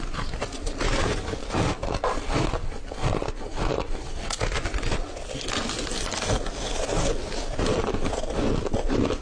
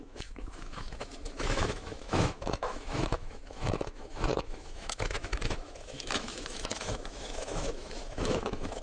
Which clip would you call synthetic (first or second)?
second